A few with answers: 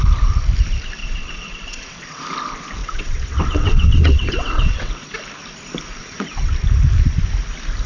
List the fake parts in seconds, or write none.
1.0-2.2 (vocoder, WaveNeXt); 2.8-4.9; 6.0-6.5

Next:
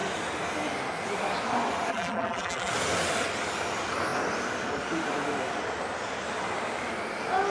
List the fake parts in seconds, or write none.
1.9-2.7 (vocoder, BigVGAN v2)

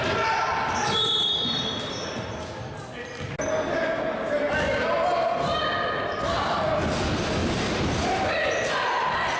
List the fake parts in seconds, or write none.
none

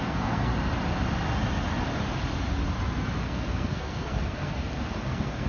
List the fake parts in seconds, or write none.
0.0-0.5 (codec, SNAC); 3.2-5.5

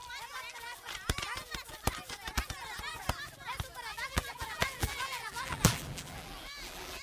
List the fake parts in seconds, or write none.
3.9-7.0 (vocoder, BigVGAN v2)

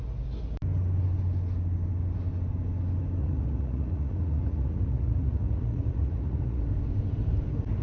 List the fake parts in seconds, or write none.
3.2-6.6 (vocoder, Vocos)

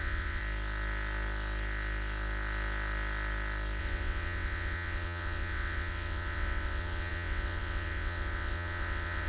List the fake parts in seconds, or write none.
0.0-0.4 (vocoder, WaveNeXt); 3.8-9.3

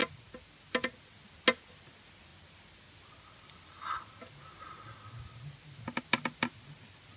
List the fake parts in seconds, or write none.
none